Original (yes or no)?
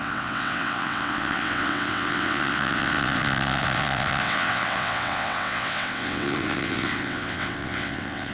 no